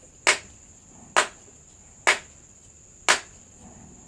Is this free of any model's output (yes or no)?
yes